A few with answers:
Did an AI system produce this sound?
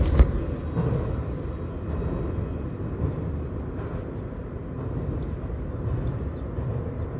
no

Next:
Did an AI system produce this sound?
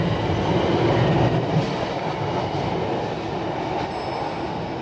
no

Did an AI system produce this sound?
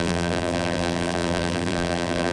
yes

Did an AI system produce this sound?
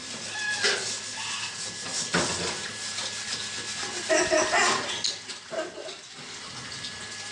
no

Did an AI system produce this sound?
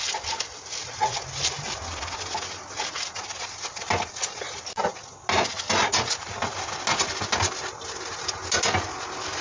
no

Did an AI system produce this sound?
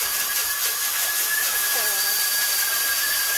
yes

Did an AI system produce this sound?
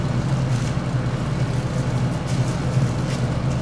no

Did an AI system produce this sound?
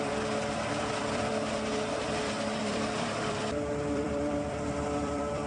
yes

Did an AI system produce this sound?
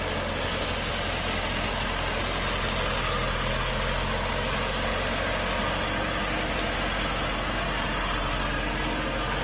no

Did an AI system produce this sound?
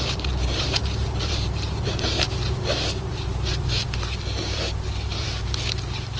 yes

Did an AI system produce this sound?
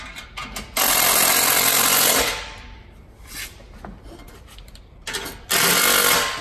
no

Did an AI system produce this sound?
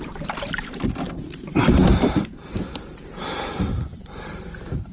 yes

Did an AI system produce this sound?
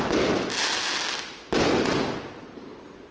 no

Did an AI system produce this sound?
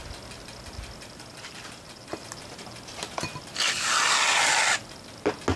no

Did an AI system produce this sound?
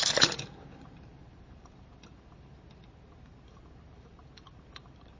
yes